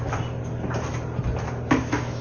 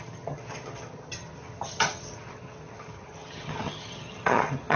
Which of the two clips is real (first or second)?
first